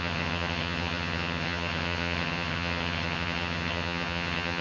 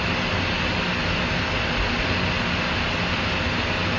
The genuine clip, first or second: second